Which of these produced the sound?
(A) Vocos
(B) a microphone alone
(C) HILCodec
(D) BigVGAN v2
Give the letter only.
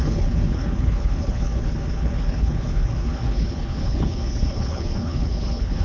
C